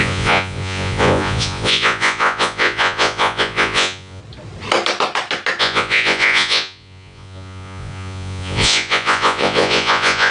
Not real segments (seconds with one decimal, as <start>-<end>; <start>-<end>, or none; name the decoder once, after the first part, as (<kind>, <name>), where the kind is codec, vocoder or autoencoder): 0.0-4.2 (vocoder, Vocos); 5.6-10.3